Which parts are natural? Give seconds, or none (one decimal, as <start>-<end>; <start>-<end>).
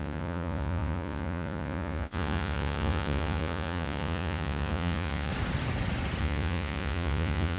5.3-6.2